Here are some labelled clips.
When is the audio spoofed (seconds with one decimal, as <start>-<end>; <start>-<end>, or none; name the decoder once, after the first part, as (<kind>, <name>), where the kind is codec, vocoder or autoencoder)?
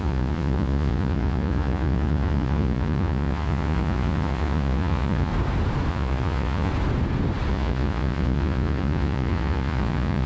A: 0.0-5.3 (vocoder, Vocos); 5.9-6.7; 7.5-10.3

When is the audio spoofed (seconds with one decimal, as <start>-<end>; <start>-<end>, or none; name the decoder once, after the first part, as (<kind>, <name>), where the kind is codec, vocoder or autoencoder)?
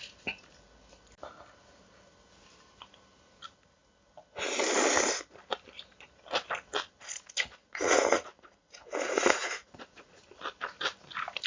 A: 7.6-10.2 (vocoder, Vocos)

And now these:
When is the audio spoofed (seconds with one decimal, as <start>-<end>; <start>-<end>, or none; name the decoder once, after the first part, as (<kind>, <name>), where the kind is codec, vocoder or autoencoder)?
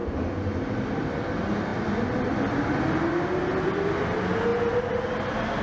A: none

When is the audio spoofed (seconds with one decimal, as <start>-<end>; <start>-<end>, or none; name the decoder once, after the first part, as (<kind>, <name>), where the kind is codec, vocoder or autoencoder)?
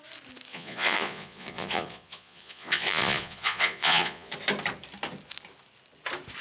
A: 0.5-4.3 (vocoder, Vocos)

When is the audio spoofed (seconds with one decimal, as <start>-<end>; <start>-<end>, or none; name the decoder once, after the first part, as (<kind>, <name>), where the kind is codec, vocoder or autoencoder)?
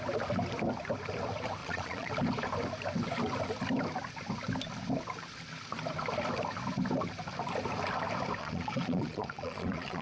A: 1.6-2.1 (vocoder, Vocos); 8.4-10.0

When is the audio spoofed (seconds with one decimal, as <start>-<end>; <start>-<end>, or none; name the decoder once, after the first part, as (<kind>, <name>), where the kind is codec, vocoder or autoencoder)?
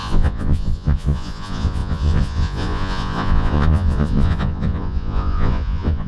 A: 0.0-6.1 (vocoder, Vocos)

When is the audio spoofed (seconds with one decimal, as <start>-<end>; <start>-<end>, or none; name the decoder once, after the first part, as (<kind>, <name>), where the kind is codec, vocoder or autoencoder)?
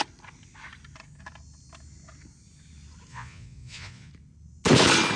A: 3.1-4.1 (vocoder, Vocos)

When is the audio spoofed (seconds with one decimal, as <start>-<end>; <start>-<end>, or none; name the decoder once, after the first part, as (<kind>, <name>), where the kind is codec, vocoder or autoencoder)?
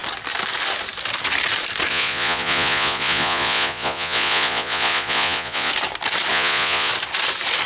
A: 1.9-5.7 (vocoder, Vocos); 6.3-6.9